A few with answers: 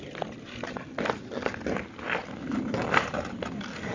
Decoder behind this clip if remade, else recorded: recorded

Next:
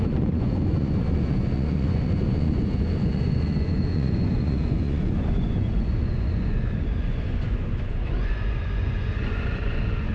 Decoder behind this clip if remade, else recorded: remade, vocoder, Vocos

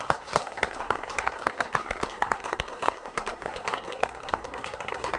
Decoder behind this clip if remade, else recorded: remade, codec, SNAC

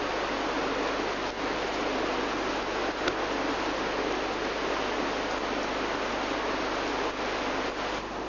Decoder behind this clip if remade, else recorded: recorded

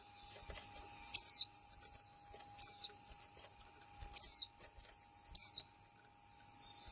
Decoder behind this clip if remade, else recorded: recorded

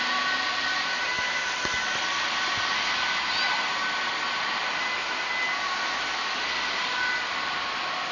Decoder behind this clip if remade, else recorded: recorded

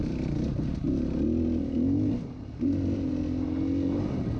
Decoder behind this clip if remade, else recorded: recorded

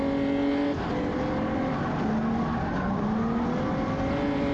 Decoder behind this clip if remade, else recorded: recorded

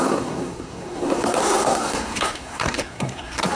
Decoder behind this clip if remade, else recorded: remade, codec, SNAC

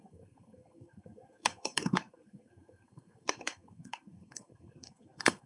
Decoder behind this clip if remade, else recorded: remade, codec, SNAC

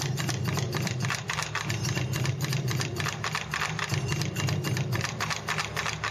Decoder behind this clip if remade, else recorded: recorded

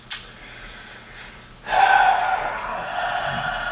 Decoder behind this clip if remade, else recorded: recorded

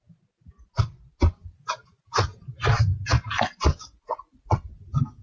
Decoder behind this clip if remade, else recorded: recorded